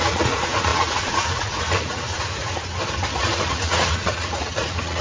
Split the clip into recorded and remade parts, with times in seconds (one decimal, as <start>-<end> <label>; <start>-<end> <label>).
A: 0.0-2.7 remade; 2.7-3.2 recorded; 3.2-5.0 remade